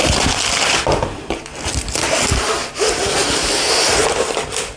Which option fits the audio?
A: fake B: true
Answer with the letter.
B